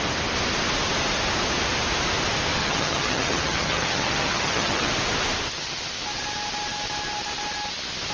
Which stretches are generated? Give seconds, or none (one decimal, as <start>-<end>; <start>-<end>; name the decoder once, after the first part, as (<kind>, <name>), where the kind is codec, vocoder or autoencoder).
2.6-4.9 (vocoder, HiFi-GAN)